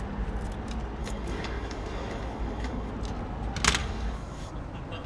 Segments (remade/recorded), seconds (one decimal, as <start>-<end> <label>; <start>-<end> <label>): 0.0-1.0 recorded; 1.0-2.9 remade; 2.9-3.8 recorded; 3.8-4.5 remade; 4.5-5.1 recorded